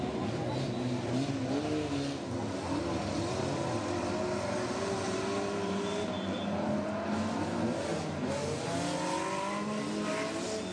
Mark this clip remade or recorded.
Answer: recorded